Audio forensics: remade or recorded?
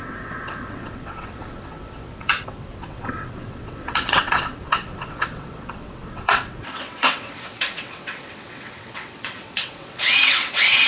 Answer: remade